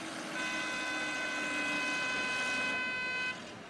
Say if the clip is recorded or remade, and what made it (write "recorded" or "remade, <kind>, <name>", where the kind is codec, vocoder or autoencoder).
recorded